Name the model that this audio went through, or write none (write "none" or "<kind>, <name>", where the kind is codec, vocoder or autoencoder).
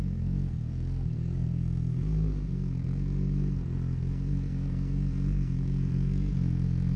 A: codec, SNAC